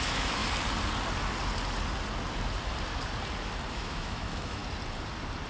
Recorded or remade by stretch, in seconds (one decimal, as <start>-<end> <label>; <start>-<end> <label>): 0.0-0.4 remade; 0.4-3.7 recorded; 3.7-4.6 remade; 4.6-5.5 recorded